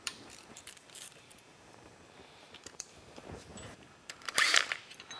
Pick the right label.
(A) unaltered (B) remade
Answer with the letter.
B